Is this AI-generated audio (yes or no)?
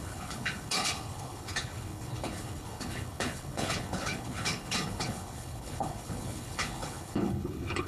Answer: yes